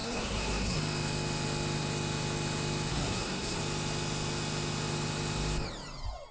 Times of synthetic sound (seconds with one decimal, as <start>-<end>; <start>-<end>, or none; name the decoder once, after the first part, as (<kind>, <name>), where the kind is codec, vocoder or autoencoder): 0.0-0.8 (codec, SNAC); 2.9-3.6